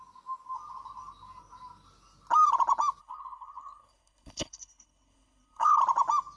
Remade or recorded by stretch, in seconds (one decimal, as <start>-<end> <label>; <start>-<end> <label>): 0.0-3.0 recorded; 3.0-5.8 remade; 5.8-6.4 recorded